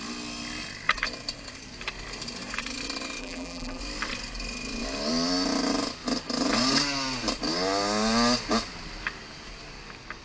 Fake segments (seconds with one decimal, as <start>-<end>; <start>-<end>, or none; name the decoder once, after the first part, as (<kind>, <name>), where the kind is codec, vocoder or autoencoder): 3.2-3.8 (vocoder, BigVGAN v2)